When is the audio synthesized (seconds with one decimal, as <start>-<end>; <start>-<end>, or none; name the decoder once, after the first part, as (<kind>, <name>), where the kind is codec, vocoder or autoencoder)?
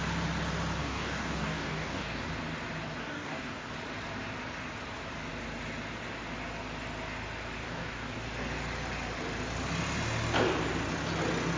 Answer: 0.8-2.2 (codec, DAC); 3.0-3.7; 7.6-8.2